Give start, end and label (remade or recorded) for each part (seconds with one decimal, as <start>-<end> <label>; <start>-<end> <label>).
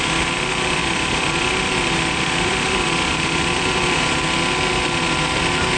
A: 0.0-0.8 recorded; 0.8-4.0 remade; 4.0-5.8 recorded